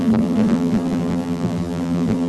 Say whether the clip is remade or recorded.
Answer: remade